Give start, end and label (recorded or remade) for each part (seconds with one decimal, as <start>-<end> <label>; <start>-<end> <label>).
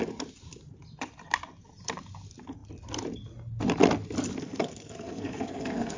0.0-4.4 recorded; 4.4-6.0 remade